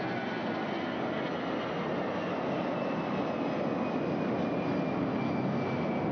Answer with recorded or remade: recorded